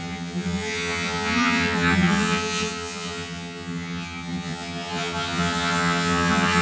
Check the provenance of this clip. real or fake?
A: fake